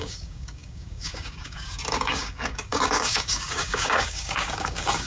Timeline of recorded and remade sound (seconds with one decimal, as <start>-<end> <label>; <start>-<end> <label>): 0.0-5.1 remade